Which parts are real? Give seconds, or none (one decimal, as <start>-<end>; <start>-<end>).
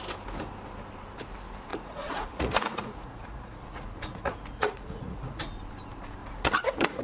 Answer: 0.0-1.7; 5.4-6.2